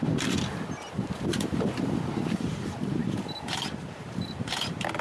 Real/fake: fake